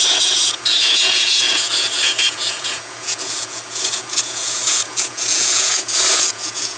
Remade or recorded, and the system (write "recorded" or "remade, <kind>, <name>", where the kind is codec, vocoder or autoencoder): remade, vocoder, Vocos